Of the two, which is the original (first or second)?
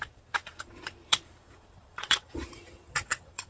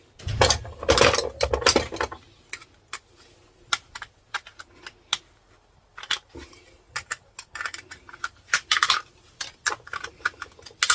second